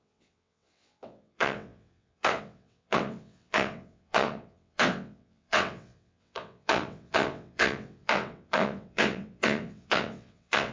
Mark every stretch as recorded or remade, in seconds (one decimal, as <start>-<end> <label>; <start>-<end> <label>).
0.0-10.7 remade